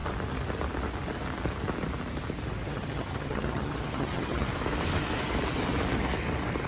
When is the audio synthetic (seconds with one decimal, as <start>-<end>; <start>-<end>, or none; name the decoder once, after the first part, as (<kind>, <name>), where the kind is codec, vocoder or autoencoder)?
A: 2.6-4.5 (vocoder, HiFi-GAN)